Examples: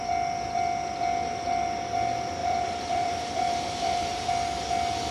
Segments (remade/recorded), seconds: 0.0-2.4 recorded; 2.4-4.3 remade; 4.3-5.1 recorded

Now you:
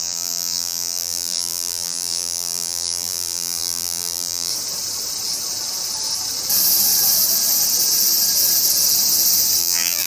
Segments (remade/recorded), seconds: 0.0-4.5 remade; 4.5-9.6 recorded; 9.6-10.1 remade